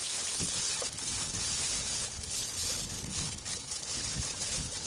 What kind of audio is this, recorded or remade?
remade